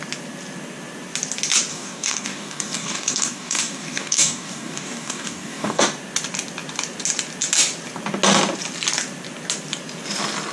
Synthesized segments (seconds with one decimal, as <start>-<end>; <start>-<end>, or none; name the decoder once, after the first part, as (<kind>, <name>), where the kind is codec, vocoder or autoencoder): 1.7-5.8 (codec, DAC)